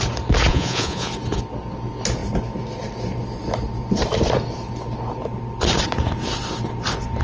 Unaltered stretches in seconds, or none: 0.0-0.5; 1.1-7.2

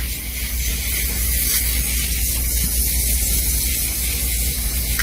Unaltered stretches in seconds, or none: 0.0-4.2

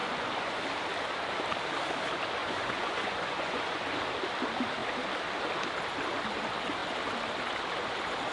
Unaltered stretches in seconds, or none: 0.6-2.4; 3.9-8.3

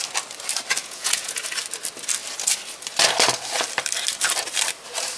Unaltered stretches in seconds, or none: 0.0-0.8; 1.4-5.2

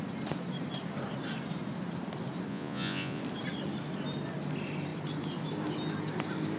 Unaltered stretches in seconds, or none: 0.0-2.5; 3.2-6.6

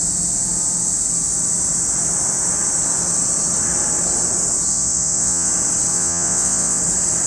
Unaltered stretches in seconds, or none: 0.0-4.7; 5.5-5.9; 6.8-7.3

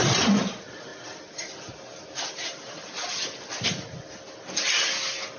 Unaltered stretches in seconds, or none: 0.0-5.4